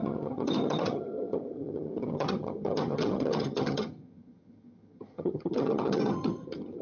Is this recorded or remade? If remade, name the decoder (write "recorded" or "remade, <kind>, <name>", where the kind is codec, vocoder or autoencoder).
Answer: remade, vocoder, HiFi-GAN